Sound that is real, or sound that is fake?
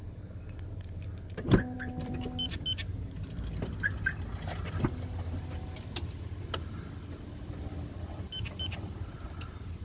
real